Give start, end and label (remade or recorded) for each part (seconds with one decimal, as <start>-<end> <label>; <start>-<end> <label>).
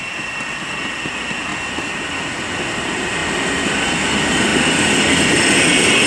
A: 0.0-6.1 recorded